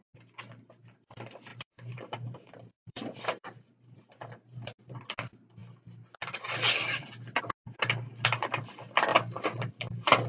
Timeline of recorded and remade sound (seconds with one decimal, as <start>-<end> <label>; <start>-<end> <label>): 0.0-1.5 recorded; 1.5-5.0 remade; 5.0-10.3 recorded